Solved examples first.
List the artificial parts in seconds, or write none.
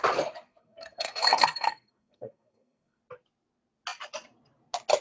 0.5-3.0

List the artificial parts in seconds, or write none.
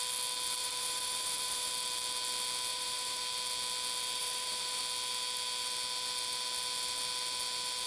0.6-1.7; 2.7-3.2; 4.2-4.8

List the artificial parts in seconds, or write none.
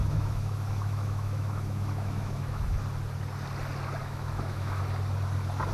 0.0-2.8; 4.0-4.8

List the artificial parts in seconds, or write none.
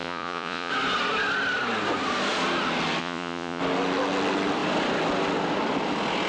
0.0-0.7; 3.0-3.6